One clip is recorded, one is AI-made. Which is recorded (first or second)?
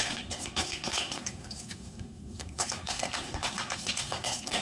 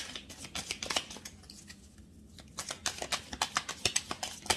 second